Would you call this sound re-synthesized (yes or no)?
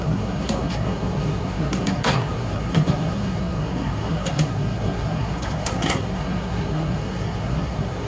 yes